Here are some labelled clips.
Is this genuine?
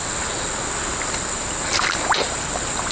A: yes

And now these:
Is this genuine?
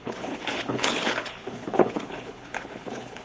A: no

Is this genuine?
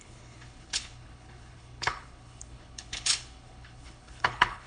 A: no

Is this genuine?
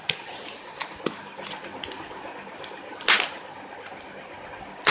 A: yes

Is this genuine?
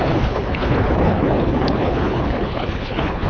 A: no